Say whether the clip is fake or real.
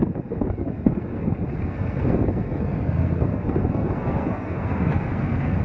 fake